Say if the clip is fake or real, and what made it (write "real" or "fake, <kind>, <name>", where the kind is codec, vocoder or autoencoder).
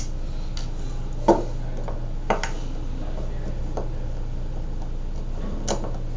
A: real